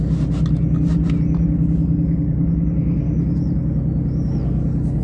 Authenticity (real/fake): real